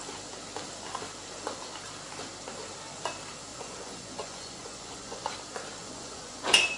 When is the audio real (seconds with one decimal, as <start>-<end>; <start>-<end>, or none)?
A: 0.0-3.5; 5.3-5.8